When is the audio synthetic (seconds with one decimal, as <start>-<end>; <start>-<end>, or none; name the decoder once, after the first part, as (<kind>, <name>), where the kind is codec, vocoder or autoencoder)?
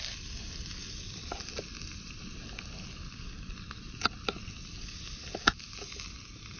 none